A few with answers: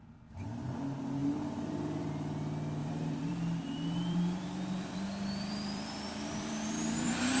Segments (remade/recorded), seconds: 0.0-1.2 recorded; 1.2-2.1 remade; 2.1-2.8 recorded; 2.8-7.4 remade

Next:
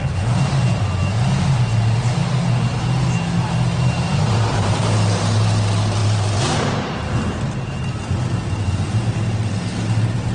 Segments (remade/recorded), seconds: 0.0-4.1 recorded; 4.1-4.8 remade; 4.8-6.0 recorded; 6.0-6.7 remade; 6.7-10.3 recorded

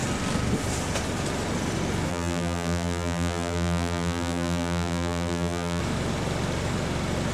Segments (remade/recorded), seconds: 0.0-2.1 recorded; 2.1-5.8 remade; 5.8-7.3 recorded

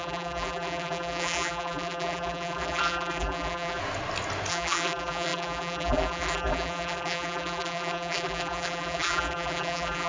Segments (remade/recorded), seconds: 0.0-3.8 remade; 3.8-4.5 recorded; 4.5-10.1 remade

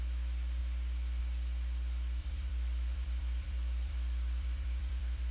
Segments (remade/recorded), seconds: 0.0-2.2 recorded; 2.2-5.3 remade

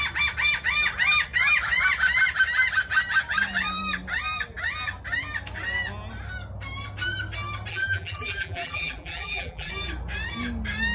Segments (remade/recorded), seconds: 0.0-7.7 recorded; 7.7-9.7 remade; 9.7-10.9 recorded

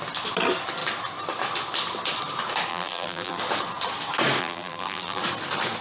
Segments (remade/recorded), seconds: 0.0-2.7 recorded; 2.7-3.4 remade; 3.4-4.4 recorded; 4.4-5.2 remade; 5.2-5.8 recorded